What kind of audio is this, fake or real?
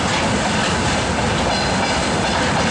real